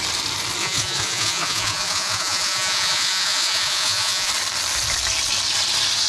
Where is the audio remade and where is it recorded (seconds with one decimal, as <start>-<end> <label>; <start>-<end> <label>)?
0.0-0.6 recorded; 0.6-4.3 remade; 4.3-6.1 recorded